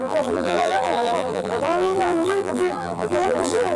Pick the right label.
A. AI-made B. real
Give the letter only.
A